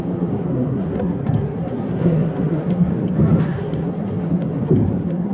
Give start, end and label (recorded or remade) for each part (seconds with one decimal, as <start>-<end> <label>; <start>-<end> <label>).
0.0-2.9 remade; 2.9-3.4 recorded; 3.4-5.3 remade